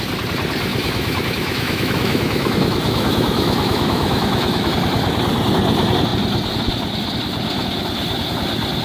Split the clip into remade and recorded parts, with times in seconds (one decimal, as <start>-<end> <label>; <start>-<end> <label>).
0.0-0.7 recorded; 0.7-4.7 remade; 4.7-8.8 recorded